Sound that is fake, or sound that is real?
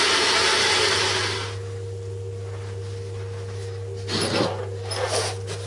real